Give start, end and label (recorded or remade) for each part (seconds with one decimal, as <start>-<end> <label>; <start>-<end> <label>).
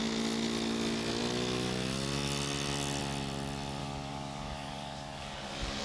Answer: 0.0-3.8 recorded; 3.8-5.8 remade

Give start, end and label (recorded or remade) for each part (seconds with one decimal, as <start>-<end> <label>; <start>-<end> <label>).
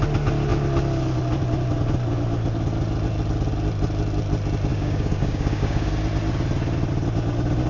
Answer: 0.0-4.7 recorded; 4.7-5.9 remade; 5.9-7.7 recorded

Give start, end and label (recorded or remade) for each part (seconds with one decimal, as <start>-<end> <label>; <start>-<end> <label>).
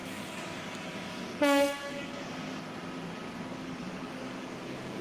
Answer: 0.0-2.3 remade; 2.3-3.5 recorded; 3.5-5.0 remade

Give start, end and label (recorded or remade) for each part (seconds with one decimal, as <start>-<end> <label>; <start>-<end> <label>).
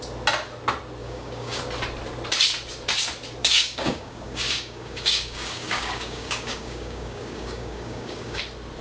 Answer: 0.0-1.0 recorded; 1.0-1.6 remade; 1.6-3.4 recorded; 3.4-8.4 remade; 8.4-8.8 recorded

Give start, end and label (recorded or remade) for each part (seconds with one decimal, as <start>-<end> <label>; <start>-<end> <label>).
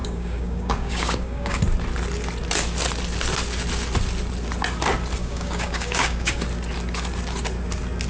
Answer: 0.0-1.6 remade; 1.6-5.2 recorded; 5.2-6.4 remade; 6.4-8.1 recorded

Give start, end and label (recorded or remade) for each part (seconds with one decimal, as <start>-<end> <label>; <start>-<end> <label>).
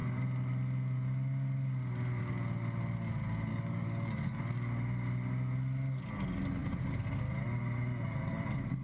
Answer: 0.0-3.5 recorded; 3.5-4.4 remade; 4.4-8.8 recorded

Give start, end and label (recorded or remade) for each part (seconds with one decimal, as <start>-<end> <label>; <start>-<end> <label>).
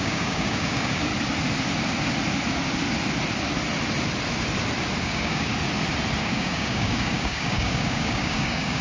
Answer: 0.0-1.1 remade; 1.1-5.0 recorded; 5.0-5.5 remade; 5.5-6.2 recorded; 6.2-8.8 remade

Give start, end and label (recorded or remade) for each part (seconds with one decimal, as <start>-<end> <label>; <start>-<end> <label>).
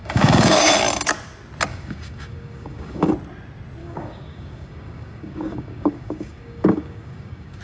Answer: 0.0-0.7 remade; 0.7-1.7 recorded; 1.7-3.1 remade; 3.1-3.8 recorded; 3.8-7.6 remade